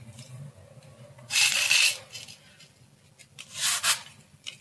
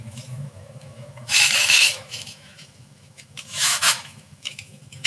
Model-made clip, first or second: second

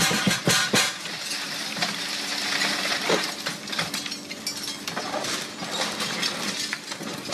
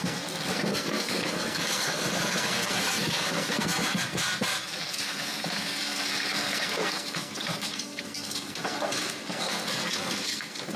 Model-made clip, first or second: second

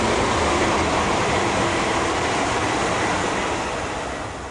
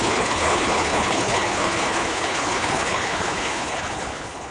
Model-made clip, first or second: second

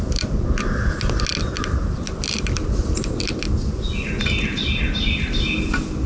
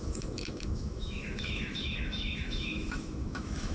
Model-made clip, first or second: second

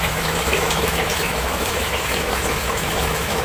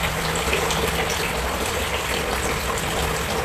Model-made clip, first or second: first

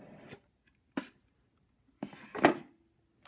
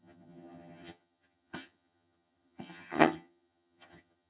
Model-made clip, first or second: second